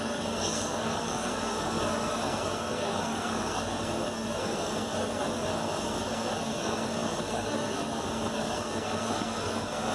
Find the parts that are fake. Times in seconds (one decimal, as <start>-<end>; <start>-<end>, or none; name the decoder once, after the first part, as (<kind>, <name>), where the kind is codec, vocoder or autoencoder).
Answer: 0.0-9.9 (codec, SNAC)